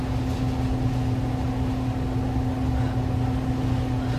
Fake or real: real